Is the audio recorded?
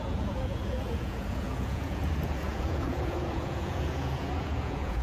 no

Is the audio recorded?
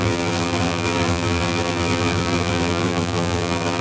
no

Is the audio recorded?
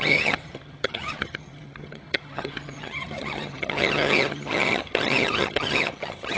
no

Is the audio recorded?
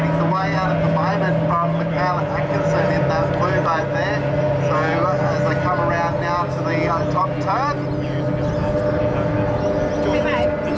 yes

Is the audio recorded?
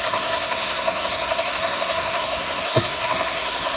no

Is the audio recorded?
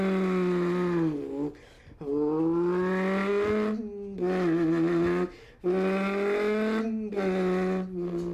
yes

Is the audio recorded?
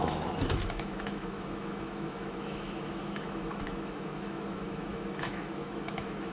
no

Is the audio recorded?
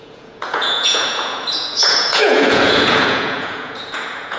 no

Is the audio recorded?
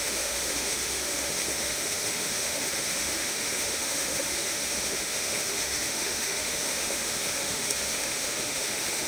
no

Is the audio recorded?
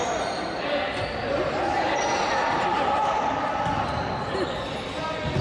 yes